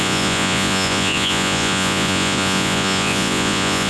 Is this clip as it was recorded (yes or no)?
no